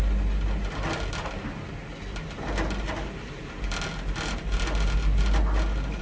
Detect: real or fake real